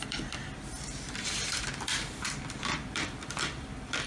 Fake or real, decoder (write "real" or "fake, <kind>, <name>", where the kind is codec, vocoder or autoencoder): fake, vocoder, BigVGAN v2